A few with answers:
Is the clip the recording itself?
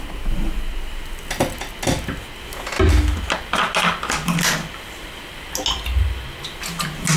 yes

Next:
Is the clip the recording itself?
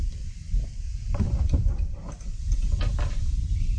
no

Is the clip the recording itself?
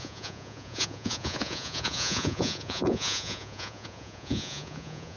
no